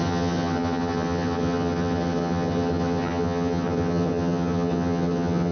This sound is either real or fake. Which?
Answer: fake